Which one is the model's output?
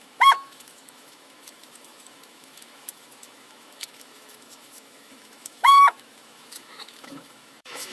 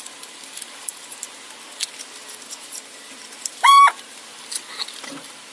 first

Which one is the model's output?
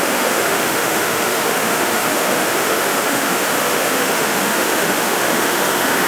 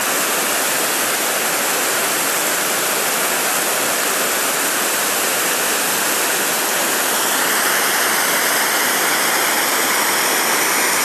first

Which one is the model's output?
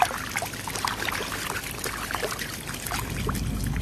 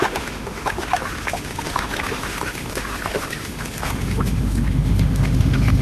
second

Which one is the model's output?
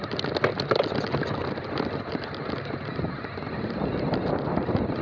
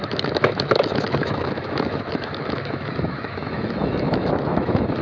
second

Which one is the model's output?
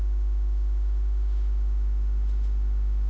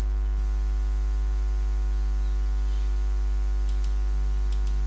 first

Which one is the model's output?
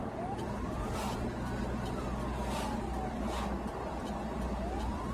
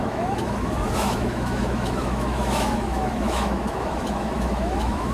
second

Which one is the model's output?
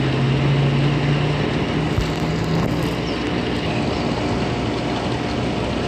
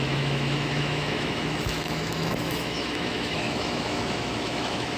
second